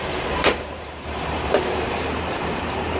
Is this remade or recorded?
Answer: remade